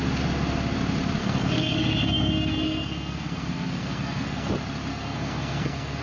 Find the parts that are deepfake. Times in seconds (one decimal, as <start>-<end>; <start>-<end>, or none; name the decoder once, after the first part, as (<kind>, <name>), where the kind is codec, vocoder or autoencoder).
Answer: 1.2-4.5 (codec, SNAC); 4.9-6.0